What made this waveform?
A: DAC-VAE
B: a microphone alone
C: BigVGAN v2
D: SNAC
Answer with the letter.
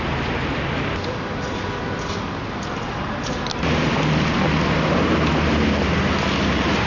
B